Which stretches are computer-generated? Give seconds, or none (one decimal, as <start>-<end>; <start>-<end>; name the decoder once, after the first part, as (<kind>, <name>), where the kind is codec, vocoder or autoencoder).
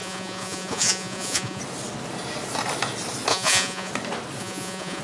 0.0-1.6 (vocoder, Vocos); 3.3-3.9; 4.4-5.0